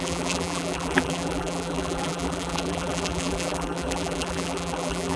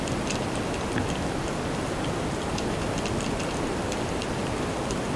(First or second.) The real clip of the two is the second